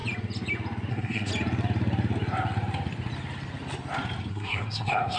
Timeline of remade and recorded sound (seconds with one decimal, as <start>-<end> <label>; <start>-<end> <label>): 0.0-0.9 recorded; 0.9-1.3 remade; 1.3-4.3 recorded; 4.3-5.2 remade